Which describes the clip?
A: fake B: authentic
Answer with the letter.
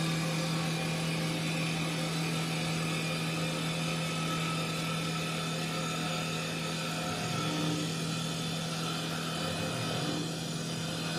B